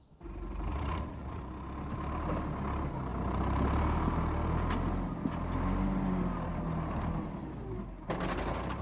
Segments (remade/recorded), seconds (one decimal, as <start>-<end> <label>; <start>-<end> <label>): 0.0-0.7 recorded; 0.7-1.4 remade; 1.4-8.8 recorded